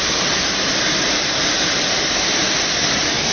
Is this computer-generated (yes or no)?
no